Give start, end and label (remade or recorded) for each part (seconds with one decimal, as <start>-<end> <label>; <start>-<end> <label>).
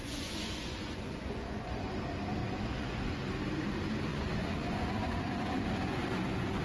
0.0-2.0 remade; 2.0-2.4 recorded; 2.4-3.2 remade; 3.2-4.1 recorded; 4.1-6.6 remade